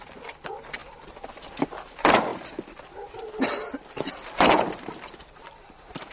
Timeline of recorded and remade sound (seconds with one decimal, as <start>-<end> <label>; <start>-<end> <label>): 0.0-6.1 recorded